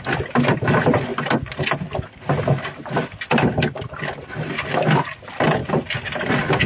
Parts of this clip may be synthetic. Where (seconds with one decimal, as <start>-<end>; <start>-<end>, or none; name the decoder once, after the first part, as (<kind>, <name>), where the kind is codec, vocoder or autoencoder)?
none